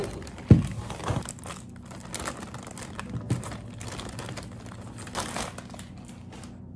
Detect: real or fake real